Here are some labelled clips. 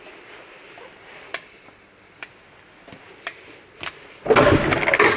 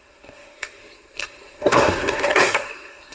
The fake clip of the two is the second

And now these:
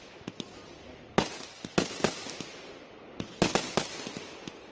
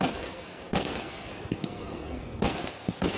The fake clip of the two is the second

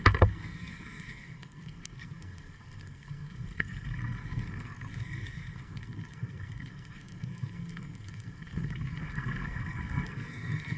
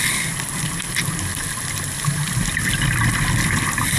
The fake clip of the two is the first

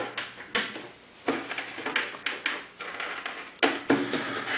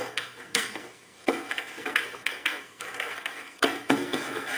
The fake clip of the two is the second